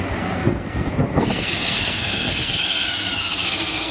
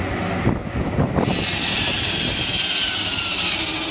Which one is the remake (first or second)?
first